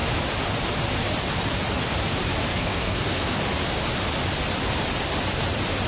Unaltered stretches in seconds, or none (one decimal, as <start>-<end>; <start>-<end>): 0.0-2.5; 3.4-5.9